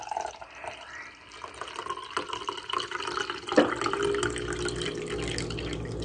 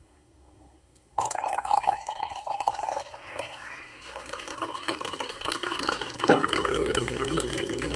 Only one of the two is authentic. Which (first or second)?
first